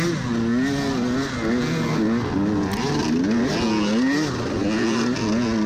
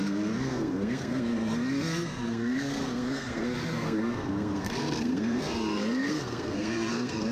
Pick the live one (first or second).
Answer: first